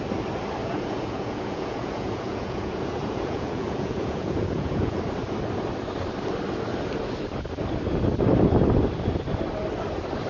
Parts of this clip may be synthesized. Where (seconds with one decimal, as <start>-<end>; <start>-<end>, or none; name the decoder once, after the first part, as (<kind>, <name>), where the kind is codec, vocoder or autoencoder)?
0.6-5.0 (vocoder, Vocos)